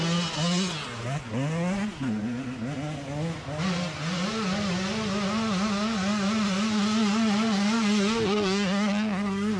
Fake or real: real